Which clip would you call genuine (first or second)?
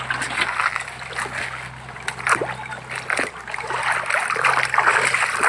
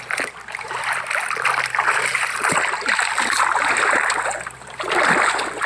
first